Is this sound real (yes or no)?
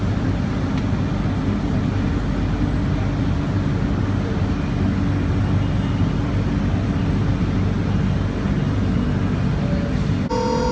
yes